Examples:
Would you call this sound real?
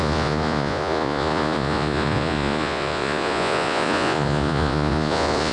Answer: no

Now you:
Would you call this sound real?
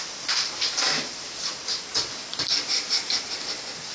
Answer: yes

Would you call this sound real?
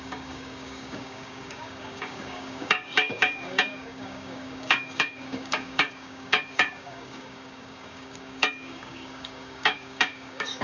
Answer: no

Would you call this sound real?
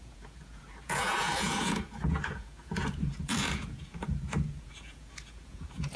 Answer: no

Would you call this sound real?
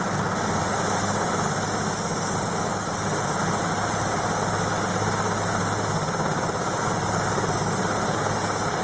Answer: yes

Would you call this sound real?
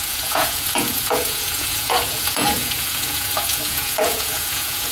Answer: no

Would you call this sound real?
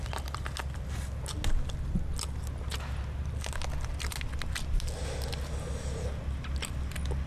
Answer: yes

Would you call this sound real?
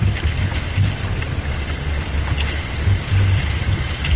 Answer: yes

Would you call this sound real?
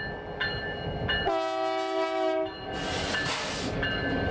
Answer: yes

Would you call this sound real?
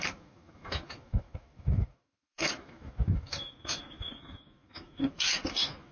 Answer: no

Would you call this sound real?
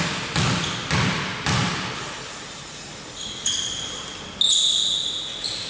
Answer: yes